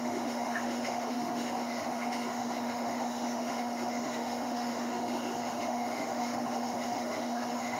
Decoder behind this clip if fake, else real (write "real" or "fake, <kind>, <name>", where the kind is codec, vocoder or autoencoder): fake, autoencoder, DAC-VAE